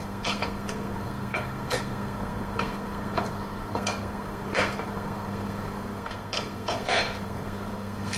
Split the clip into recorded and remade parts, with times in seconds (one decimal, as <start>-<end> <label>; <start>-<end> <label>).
0.0-8.2 remade